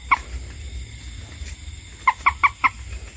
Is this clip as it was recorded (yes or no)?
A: yes